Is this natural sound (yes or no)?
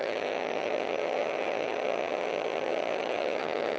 no